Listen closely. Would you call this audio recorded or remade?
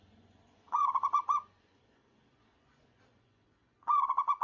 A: remade